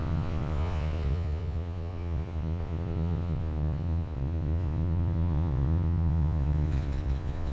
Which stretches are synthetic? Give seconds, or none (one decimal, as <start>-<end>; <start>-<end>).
0.0-7.5